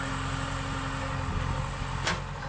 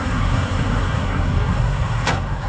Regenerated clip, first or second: second